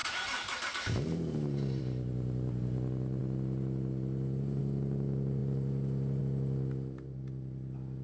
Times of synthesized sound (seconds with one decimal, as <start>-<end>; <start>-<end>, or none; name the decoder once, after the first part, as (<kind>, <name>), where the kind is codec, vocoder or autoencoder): 0.0-1.8 (vocoder, BigVGAN v2); 3.2-4.6; 5.4-6.2